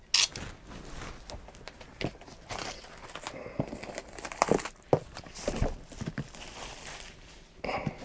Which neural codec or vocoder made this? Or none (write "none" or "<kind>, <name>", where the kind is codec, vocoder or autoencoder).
none